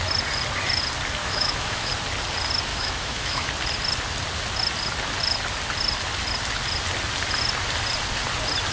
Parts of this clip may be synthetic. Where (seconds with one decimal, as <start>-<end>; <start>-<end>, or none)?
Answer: 1.2-1.9; 2.7-3.5